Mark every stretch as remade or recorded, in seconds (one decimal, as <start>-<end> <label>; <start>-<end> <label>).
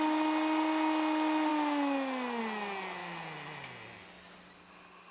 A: 0.0-5.1 recorded